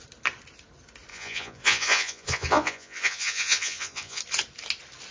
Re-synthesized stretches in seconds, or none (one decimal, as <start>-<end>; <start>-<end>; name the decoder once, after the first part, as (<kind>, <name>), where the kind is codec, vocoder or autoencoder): 1.1-4.2 (vocoder, Vocos)